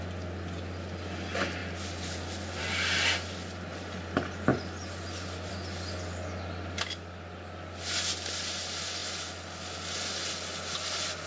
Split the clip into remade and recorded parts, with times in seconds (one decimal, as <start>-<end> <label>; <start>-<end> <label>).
0.0-11.3 recorded